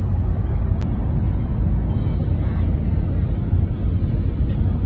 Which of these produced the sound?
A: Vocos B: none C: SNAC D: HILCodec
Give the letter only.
B